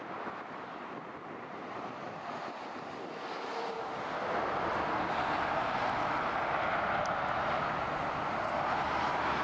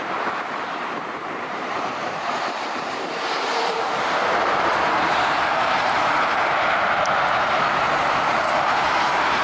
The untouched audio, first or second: first